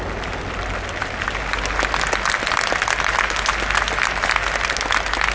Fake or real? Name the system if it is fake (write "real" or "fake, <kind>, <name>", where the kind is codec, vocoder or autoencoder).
real